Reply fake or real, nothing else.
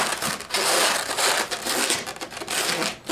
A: real